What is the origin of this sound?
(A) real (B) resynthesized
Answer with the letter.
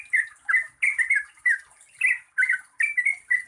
A